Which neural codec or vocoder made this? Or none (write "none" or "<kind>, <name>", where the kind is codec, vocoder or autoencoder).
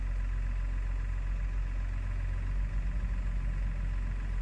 none